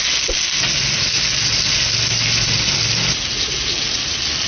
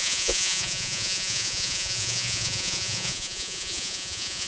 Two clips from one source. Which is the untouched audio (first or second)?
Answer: first